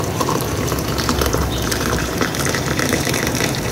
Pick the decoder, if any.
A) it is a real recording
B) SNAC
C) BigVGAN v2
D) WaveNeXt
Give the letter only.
C